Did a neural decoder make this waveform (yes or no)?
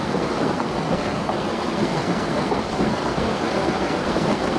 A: yes